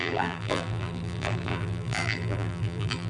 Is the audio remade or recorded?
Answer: remade